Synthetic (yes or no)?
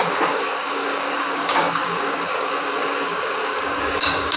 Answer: yes